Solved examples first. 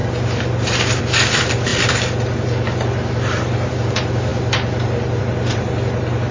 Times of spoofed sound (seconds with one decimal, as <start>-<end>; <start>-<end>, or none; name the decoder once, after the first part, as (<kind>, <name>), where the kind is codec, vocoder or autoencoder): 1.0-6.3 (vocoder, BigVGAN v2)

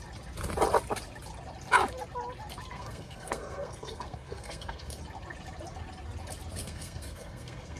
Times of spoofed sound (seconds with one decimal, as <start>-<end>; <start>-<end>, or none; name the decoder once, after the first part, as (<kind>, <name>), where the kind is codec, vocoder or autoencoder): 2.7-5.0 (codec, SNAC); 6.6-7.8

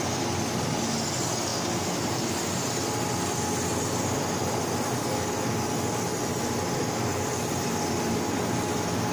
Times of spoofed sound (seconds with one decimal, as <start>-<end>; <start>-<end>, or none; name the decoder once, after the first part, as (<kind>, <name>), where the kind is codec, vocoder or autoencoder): none